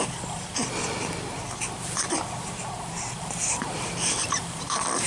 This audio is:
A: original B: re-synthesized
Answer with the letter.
B